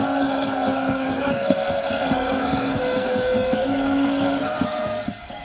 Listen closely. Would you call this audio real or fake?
fake